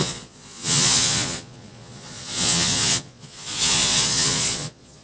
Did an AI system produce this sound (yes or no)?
yes